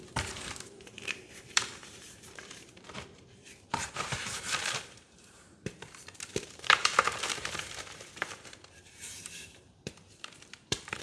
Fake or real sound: fake